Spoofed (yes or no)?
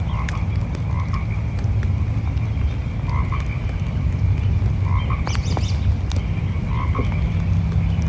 no